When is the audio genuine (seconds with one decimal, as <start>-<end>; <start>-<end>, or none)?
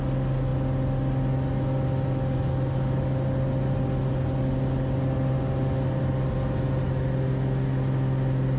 0.0-8.6